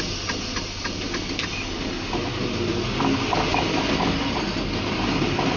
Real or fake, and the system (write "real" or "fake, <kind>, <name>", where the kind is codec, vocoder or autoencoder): real